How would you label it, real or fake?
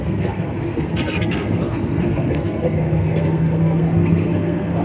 fake